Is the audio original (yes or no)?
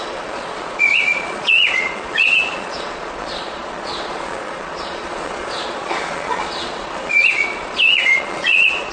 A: no